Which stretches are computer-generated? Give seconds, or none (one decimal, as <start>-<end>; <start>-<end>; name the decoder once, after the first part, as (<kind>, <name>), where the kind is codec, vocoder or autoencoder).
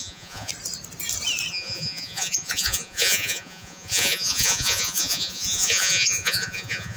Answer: 0.0-0.5 (vocoder, Vocos); 1.5-7.0